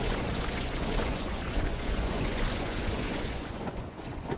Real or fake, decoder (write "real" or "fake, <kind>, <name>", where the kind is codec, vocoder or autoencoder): fake, vocoder, Vocos